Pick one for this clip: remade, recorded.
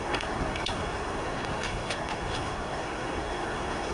remade